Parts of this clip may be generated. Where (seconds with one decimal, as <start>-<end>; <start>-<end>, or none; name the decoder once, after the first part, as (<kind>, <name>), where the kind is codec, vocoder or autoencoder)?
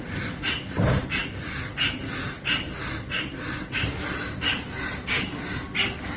none